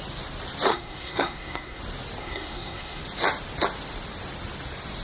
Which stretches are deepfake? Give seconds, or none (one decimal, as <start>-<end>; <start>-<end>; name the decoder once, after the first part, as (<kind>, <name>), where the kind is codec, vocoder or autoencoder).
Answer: 0.7-1.8 (codec, SNAC); 2.2-3.0